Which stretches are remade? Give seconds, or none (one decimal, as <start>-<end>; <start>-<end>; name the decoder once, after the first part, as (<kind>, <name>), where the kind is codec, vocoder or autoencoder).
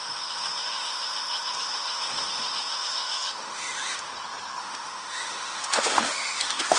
0.0-4.1 (autoencoder, DAC-VAE); 4.6-6.8